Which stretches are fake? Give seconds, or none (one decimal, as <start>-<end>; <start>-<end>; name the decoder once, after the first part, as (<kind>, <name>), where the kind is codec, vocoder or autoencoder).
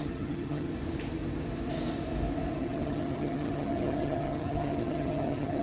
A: 0.0-0.7 (vocoder, HiFi-GAN); 2.6-5.6